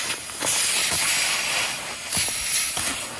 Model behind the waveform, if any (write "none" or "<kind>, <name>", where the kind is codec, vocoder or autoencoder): none